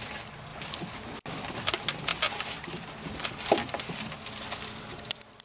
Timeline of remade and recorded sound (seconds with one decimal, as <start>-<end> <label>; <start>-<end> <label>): 0.0-5.4 recorded